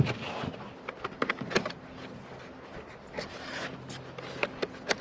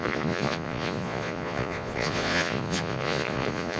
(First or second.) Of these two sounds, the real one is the first